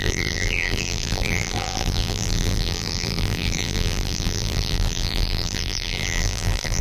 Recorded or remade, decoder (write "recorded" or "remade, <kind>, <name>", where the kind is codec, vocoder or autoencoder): remade, vocoder, BigVGAN v2